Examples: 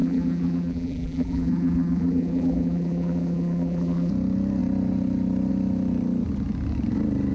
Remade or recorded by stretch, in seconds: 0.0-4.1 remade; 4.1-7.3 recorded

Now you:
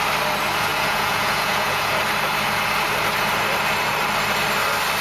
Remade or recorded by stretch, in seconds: 0.0-0.7 recorded; 0.7-1.9 remade; 1.9-5.0 recorded

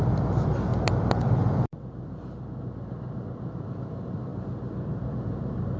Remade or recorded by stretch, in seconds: 0.0-5.8 recorded

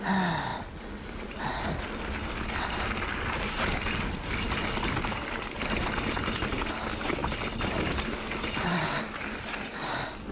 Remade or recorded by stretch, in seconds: 0.0-10.3 recorded